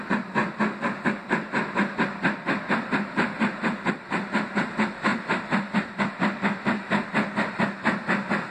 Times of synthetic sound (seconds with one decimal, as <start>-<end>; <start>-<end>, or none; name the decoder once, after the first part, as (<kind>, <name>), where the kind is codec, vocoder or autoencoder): none